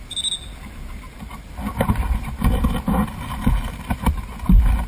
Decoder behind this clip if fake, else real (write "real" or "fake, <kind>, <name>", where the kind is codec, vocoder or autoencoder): real